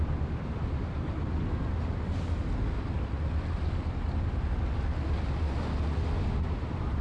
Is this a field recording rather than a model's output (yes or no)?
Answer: yes